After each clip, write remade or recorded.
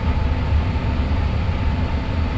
recorded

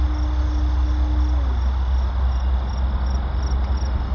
recorded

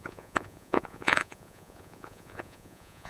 remade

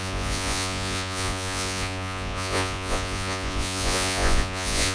remade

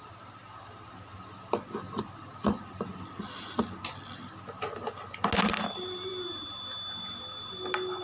recorded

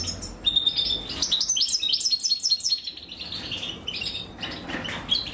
recorded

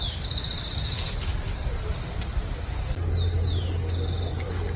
recorded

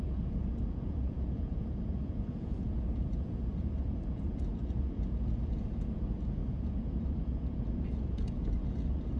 remade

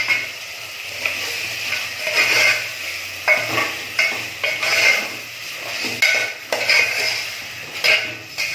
recorded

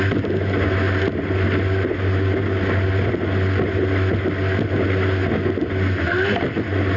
recorded